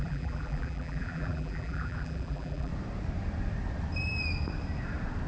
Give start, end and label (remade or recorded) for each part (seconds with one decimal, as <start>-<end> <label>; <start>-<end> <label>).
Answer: 0.0-2.7 remade; 2.7-5.3 recorded